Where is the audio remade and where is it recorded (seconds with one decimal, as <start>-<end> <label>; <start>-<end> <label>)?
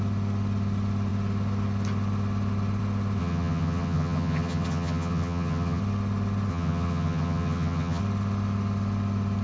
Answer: 0.0-3.2 recorded; 3.2-5.8 remade; 5.8-6.5 recorded; 6.5-8.0 remade; 8.0-9.4 recorded